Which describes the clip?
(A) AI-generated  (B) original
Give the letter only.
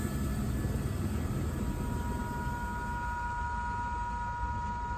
B